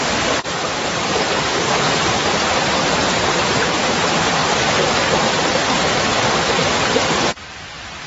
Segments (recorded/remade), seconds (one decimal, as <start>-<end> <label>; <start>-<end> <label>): 0.0-4.4 remade; 4.4-5.0 recorded; 5.0-5.6 remade; 5.6-7.4 recorded; 7.4-8.1 remade